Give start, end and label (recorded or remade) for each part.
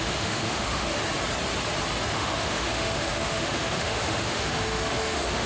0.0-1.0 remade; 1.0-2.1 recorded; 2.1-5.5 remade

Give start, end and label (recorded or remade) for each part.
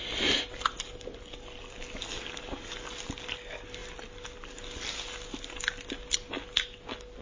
0.0-7.2 recorded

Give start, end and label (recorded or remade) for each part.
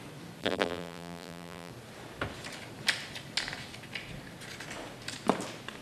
0.0-0.4 recorded; 0.4-1.7 remade; 1.7-5.8 recorded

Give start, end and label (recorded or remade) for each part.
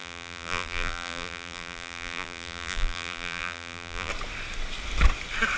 0.0-4.1 remade; 4.1-5.6 recorded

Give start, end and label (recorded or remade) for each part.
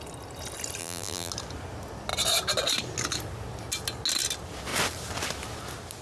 0.0-0.8 recorded; 0.8-1.3 remade; 1.3-6.0 recorded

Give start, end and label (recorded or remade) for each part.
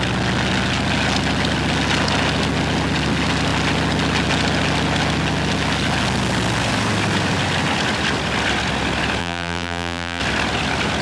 0.0-9.2 recorded; 9.2-10.2 remade; 10.2-11.0 recorded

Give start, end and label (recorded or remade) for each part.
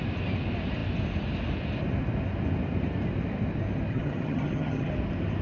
0.0-3.9 recorded; 3.9-4.9 remade; 4.9-5.4 recorded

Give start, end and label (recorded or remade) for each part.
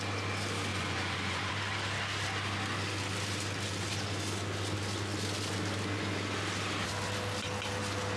0.0-0.7 recorded; 0.7-1.5 remade; 1.5-8.2 recorded